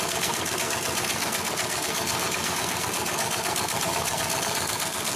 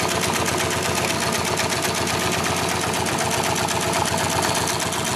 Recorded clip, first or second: second